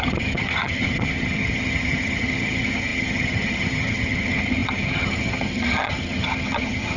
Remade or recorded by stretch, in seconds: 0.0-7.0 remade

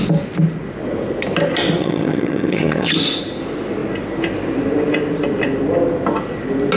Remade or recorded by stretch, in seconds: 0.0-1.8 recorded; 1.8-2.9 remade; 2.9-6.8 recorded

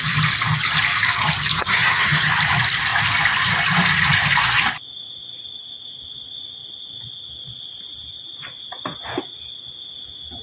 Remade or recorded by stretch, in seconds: 0.0-1.5 recorded; 1.5-2.3 remade; 2.3-10.4 recorded

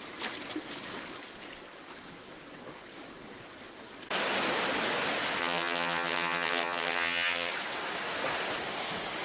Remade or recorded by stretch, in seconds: 0.0-5.4 recorded; 5.4-7.5 remade; 7.5-9.2 recorded

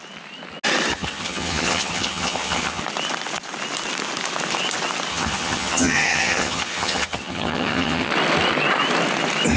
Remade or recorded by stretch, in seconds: 0.0-0.9 recorded; 0.9-2.8 remade; 2.8-5.1 recorded; 5.1-8.1 remade; 8.1-9.6 recorded